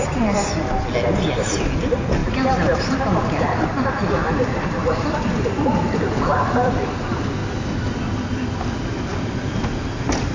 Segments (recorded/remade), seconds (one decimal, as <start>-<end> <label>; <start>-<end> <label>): 0.0-4.8 recorded; 4.8-6.7 remade; 6.7-9.1 recorded; 9.1-10.3 remade